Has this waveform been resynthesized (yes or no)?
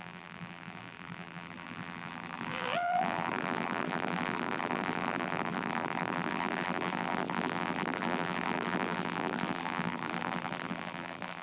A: yes